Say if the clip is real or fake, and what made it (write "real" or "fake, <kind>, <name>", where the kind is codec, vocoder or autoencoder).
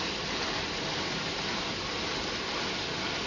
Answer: real